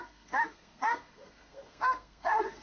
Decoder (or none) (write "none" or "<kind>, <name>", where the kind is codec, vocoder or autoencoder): codec, SNAC